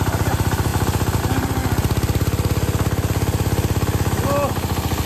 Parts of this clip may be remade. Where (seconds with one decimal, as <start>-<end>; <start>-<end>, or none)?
0.0-0.7; 1.2-1.6